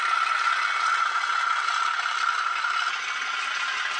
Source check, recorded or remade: recorded